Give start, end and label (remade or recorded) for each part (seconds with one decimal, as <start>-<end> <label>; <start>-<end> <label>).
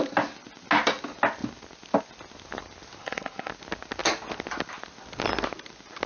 0.0-3.0 recorded; 3.0-3.5 remade; 3.5-6.1 recorded